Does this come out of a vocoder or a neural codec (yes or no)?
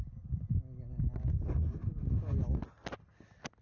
no